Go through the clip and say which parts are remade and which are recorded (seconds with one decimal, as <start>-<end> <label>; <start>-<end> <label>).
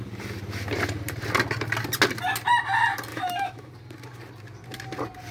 0.0-3.1 recorded; 3.1-3.7 remade; 3.7-5.3 recorded